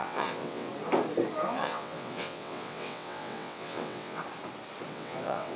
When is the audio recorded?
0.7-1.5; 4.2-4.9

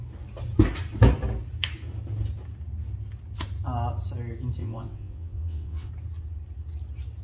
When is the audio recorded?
0.0-4.6; 5.9-7.2

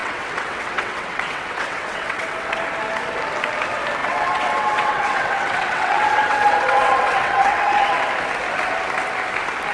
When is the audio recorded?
2.6-4.0; 8.1-9.7

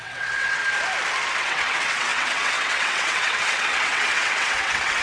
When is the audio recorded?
0.6-1.4